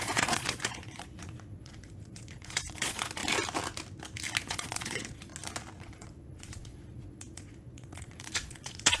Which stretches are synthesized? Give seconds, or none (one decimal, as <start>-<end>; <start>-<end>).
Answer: 0.0-3.2; 4.4-5.3; 5.8-9.0